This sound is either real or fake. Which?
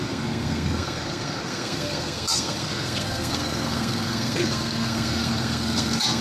fake